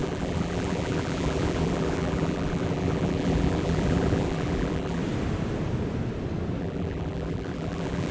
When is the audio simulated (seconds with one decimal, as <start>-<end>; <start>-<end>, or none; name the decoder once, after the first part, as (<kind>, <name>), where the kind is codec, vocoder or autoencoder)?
0.0-5.0 (vocoder, BigVGAN v2); 6.6-8.1